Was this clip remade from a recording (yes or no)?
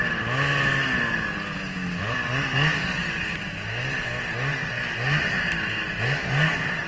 no